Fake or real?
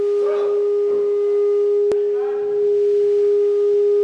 real